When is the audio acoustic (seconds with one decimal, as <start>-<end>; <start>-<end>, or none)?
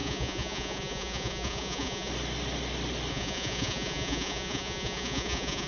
2.1-3.1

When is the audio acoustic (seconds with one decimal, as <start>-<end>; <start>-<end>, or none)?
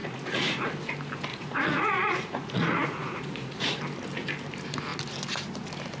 0.7-1.3; 3.8-6.0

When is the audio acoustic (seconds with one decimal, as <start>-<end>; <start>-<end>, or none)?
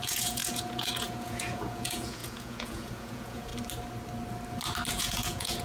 3.5-4.9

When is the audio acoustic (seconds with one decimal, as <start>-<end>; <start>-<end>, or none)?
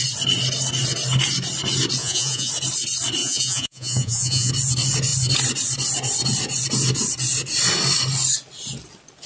0.0-2.0; 2.5-3.2; 4.5-9.3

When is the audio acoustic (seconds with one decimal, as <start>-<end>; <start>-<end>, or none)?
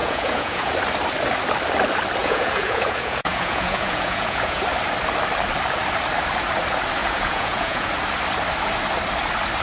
0.7-2.2; 4.6-7.0; 7.9-9.6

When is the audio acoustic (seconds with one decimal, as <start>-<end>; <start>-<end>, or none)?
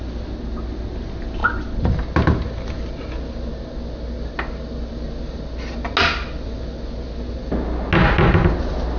0.0-9.0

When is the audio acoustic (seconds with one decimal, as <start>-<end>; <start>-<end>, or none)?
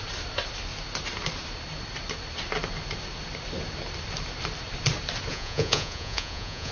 0.0-5.3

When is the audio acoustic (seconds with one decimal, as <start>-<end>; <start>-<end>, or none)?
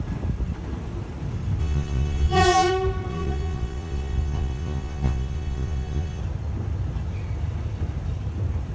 0.0-1.6; 2.7-3.1; 6.2-8.7